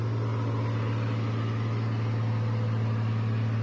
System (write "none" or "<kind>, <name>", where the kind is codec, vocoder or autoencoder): none